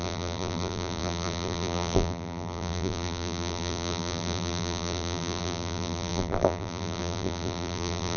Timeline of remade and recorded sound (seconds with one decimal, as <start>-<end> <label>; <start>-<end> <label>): 0.0-8.2 remade